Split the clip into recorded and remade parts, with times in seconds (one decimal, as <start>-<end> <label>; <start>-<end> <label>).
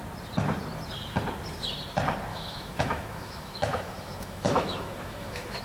0.0-2.3 recorded; 2.3-5.6 remade